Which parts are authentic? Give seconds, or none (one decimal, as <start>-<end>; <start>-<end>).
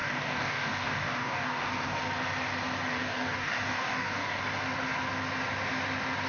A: 2.0-2.9; 4.4-6.3